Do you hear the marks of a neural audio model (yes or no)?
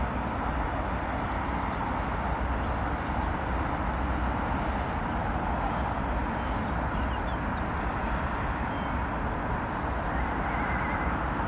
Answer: no